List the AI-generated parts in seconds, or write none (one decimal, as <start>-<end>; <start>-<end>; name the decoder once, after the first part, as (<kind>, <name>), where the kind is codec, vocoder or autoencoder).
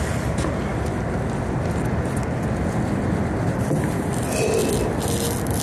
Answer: none